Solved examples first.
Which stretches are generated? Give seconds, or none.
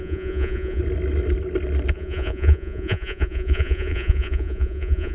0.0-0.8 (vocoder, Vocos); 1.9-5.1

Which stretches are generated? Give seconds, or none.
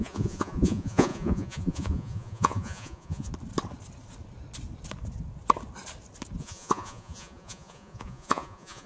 0.0-3.3 (vocoder, Vocos); 6.4-8.9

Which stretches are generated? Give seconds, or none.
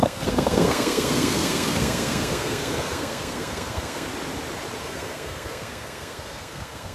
0.0-4.1 (codec, SNAC); 4.8-6.9